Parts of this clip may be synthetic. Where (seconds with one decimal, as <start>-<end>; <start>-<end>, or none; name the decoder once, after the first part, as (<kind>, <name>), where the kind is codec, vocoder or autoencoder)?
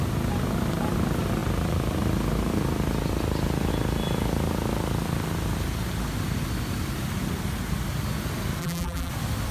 8.6-9.1 (vocoder, BigVGAN v2)